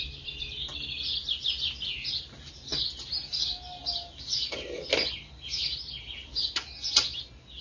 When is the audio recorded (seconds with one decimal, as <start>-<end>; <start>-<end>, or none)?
0.0-7.6